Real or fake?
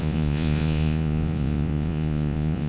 fake